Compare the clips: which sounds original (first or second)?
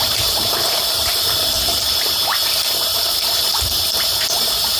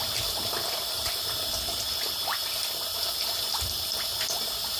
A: second